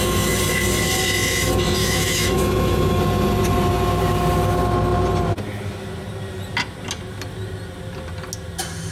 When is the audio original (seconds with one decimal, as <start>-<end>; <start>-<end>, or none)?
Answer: 0.0-1.8; 3.0-8.9